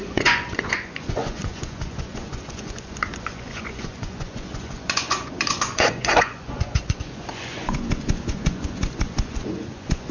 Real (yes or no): no